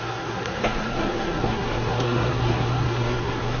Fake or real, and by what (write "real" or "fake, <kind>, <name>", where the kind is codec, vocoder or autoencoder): fake, codec, SNAC